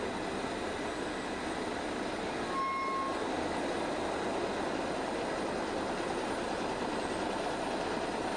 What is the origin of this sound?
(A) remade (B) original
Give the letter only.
B